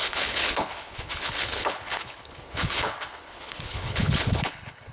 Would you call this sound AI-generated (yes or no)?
yes